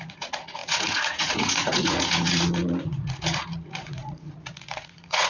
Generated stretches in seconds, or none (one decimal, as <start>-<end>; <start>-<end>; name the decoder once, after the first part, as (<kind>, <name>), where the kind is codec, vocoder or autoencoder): 0.0-5.3 (vocoder, Vocos)